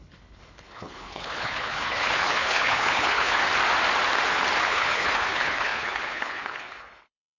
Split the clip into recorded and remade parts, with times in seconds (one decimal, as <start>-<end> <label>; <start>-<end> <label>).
0.0-3.4 remade; 3.4-4.6 recorded; 4.6-7.4 remade